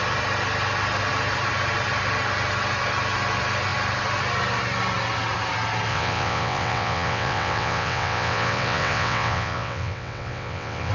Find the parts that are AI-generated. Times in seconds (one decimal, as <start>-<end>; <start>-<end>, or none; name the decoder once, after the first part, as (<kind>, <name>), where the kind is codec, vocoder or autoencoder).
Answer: 5.9-10.9 (vocoder, WaveNeXt)